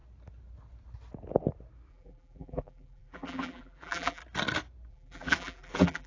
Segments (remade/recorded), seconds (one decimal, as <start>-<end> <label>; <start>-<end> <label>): 0.0-1.9 recorded; 1.9-4.2 remade; 4.2-4.9 recorded; 4.9-6.1 remade